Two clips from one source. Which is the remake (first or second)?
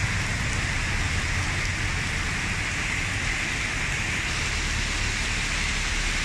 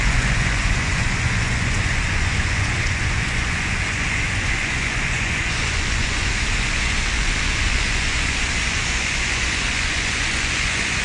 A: second